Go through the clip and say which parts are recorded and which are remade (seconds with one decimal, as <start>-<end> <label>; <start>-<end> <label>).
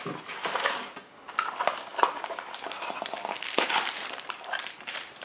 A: 0.0-1.9 recorded; 1.9-5.2 remade